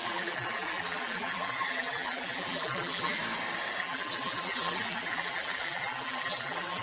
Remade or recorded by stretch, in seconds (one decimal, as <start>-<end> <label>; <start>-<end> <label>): 0.0-3.2 remade; 3.2-3.8 recorded; 3.8-6.8 remade